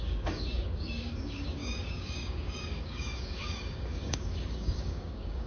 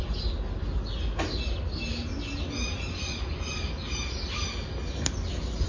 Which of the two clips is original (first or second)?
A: second